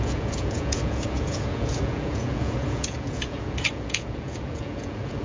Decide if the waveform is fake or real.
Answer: fake